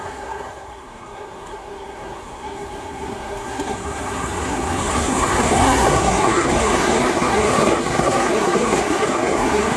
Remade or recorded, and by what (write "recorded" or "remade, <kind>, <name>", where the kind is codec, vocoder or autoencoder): remade, codec, SNAC